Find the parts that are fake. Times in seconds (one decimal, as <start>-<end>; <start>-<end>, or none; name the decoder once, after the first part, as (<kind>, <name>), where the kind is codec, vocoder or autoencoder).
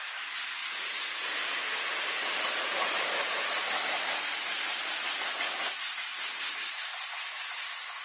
0.6-5.1 (vocoder, BigVGAN v2)